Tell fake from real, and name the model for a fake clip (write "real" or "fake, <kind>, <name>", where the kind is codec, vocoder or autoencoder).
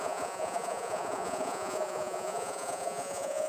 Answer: fake, vocoder, Vocos